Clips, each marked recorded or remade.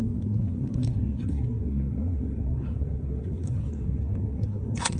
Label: remade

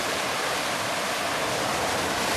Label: recorded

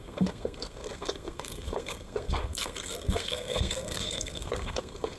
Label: remade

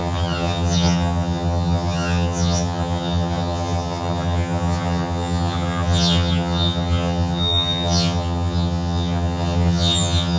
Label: remade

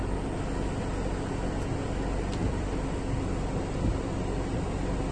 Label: recorded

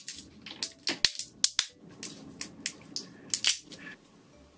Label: recorded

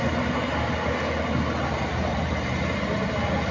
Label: recorded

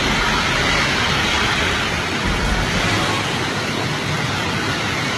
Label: recorded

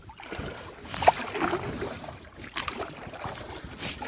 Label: recorded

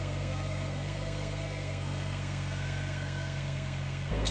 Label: remade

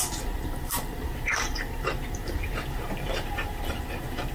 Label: remade